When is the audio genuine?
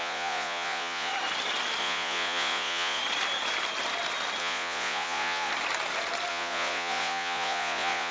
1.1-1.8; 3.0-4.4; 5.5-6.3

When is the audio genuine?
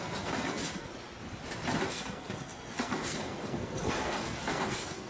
0.9-1.9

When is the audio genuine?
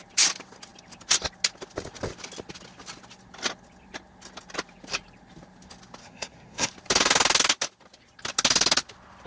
0.0-6.0; 6.7-9.3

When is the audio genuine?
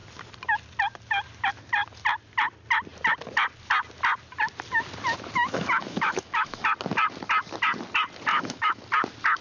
0.0-5.4; 6.6-8.3; 8.8-9.4